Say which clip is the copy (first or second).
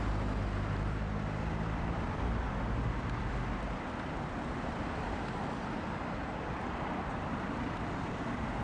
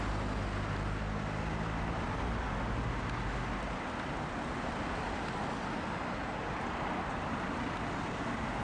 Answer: first